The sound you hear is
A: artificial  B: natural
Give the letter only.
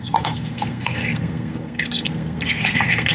A